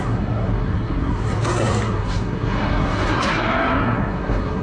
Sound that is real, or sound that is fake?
fake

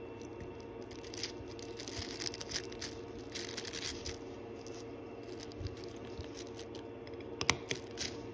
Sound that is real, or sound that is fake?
real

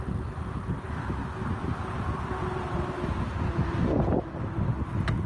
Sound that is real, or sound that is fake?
real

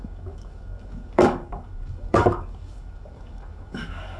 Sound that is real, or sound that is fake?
fake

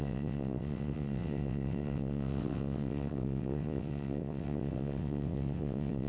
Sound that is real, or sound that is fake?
fake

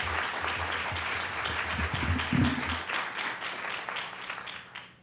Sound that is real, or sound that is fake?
real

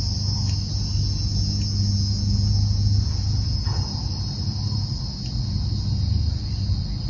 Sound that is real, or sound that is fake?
real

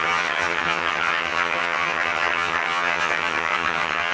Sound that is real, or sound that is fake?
fake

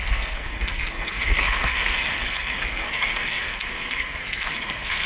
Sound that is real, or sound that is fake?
fake